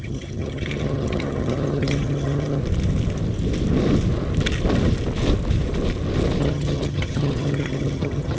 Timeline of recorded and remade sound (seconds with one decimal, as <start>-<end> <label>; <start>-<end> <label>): 0.0-2.6 remade; 2.6-6.4 recorded; 6.4-8.4 remade